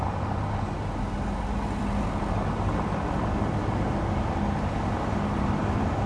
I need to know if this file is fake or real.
real